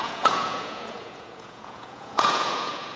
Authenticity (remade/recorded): remade